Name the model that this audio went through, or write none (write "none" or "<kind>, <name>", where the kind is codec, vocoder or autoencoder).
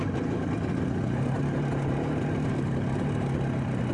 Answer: none